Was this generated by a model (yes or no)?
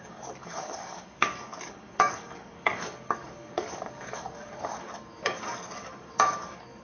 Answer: yes